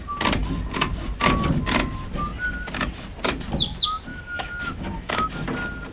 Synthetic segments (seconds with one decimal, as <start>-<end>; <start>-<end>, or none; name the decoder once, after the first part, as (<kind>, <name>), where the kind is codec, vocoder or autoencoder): 4.1-5.3 (autoencoder, DAC-VAE)